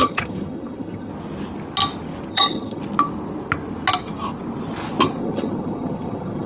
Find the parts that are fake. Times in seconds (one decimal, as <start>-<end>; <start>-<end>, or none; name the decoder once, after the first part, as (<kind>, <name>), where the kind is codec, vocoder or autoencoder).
0.0-1.1 (vocoder, HiFi-GAN); 2.3-2.8; 5.2-6.5